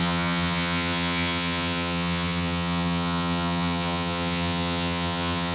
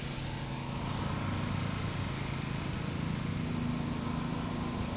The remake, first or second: first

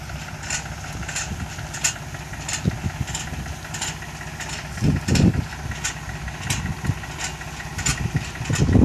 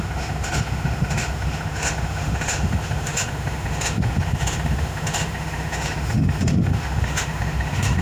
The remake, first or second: second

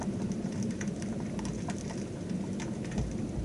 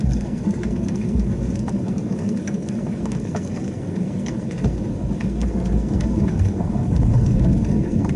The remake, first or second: second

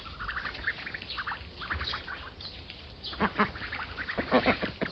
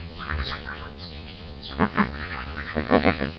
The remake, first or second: second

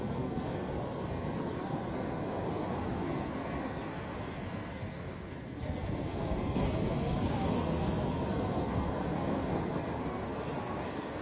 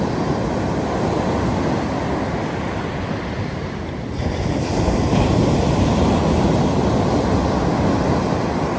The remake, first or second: first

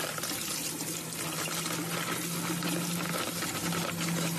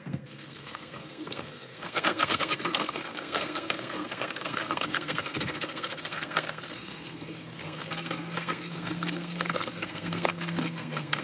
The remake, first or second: second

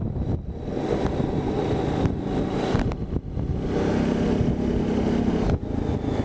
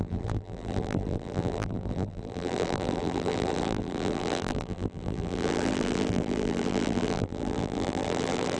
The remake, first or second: second